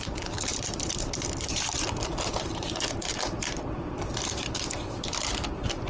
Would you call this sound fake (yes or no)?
yes